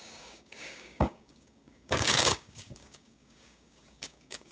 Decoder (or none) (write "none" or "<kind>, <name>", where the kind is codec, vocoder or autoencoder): codec, DAC